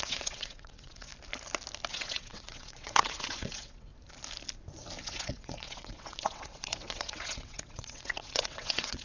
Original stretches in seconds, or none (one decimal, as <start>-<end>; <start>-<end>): 1.1-1.9; 3.9-5.0